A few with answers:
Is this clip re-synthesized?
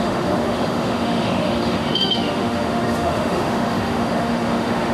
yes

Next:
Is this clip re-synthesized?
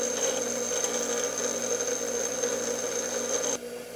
no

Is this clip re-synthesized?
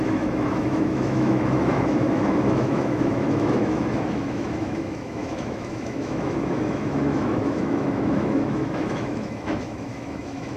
yes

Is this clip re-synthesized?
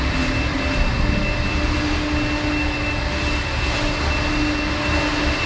no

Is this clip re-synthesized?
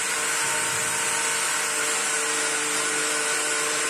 no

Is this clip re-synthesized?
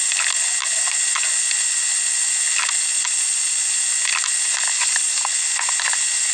no